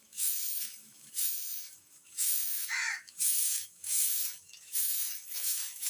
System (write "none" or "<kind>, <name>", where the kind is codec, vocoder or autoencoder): autoencoder, DAC-VAE